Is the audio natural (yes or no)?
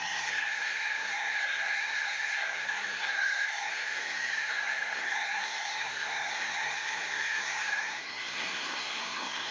no